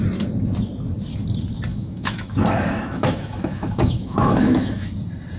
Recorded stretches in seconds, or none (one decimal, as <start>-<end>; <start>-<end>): 0.0-1.7; 4.9-5.4